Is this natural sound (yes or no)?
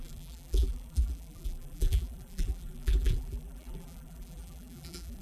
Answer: no